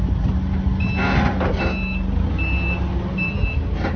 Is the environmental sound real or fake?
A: real